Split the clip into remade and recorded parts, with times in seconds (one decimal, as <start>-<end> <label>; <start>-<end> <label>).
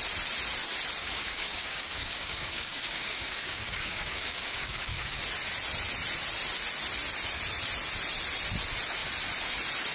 0.0-1.0 recorded; 1.0-5.2 remade; 5.2-9.9 recorded